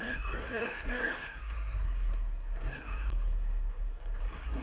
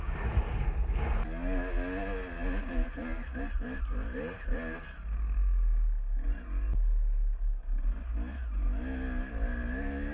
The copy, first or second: first